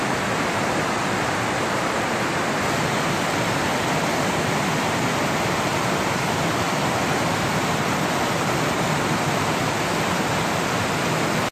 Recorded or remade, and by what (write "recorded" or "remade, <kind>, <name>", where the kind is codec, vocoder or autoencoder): recorded